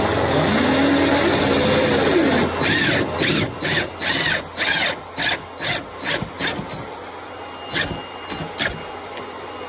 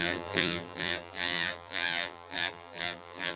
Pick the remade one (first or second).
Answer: second